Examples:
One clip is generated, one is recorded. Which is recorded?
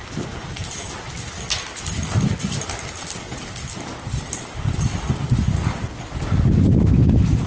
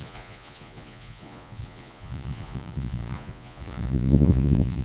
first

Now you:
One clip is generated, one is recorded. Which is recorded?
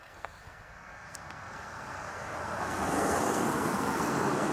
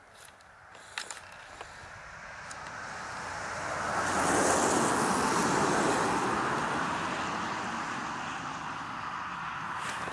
second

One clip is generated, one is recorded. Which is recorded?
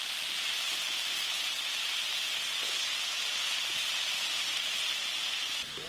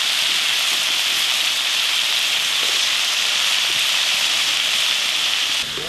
first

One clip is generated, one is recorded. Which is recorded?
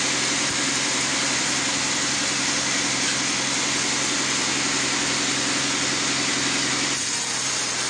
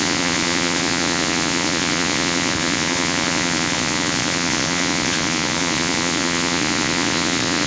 first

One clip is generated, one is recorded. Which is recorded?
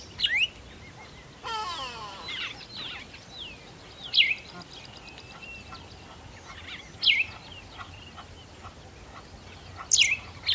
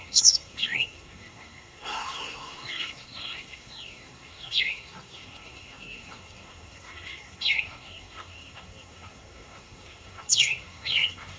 first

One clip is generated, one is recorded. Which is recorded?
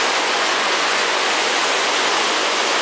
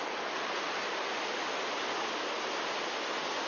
second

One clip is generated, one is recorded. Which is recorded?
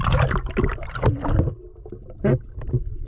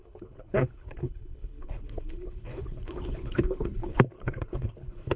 first